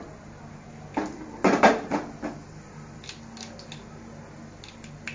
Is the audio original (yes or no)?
yes